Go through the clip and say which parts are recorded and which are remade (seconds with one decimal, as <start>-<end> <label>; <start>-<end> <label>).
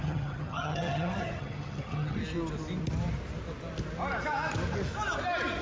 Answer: 0.0-2.2 remade; 2.2-5.6 recorded